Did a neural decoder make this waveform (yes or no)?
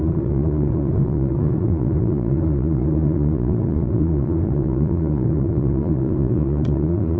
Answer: yes